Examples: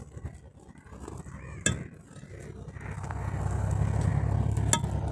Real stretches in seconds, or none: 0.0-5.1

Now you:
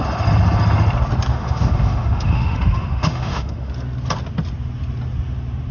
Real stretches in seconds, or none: 0.0-1.3; 3.7-5.7

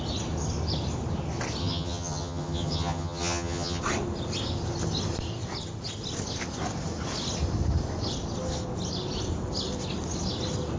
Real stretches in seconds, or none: 0.0-1.6; 3.8-10.8

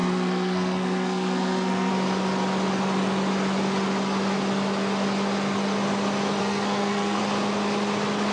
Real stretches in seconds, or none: 1.9-6.4; 7.2-8.3